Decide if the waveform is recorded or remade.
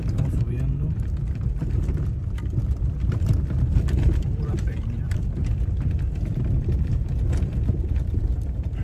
remade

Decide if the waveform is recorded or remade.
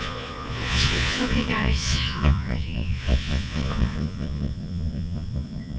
remade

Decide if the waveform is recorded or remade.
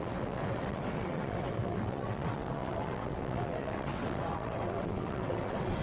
remade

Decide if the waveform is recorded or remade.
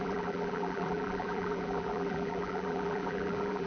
remade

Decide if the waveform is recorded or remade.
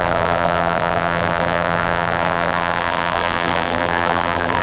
remade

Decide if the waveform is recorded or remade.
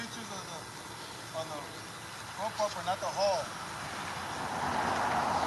recorded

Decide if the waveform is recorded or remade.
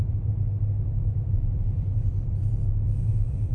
remade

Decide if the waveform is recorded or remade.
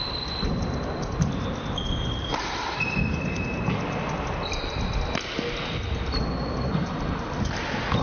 recorded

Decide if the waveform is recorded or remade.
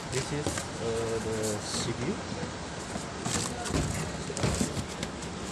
recorded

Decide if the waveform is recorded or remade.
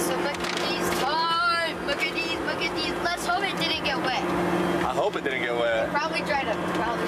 recorded